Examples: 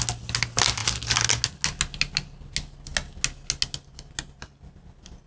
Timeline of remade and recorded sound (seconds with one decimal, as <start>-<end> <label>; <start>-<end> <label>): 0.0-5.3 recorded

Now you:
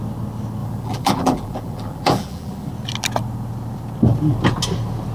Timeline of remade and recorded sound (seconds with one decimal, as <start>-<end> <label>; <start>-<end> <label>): 0.0-0.6 recorded; 0.6-2.7 remade; 2.7-5.1 recorded

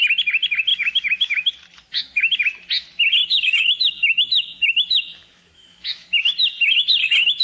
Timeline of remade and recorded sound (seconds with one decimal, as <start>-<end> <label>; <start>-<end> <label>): 0.0-0.7 recorded; 0.7-1.5 remade; 1.5-1.9 recorded; 1.9-2.4 remade; 2.4-3.2 recorded; 3.2-6.2 remade; 6.2-7.4 recorded

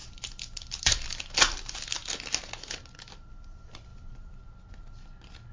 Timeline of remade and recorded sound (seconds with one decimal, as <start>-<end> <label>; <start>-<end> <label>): 0.0-5.5 recorded